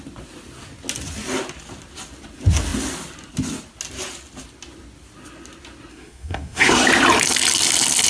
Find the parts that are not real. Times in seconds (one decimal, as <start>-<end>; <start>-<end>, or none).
5.9-6.7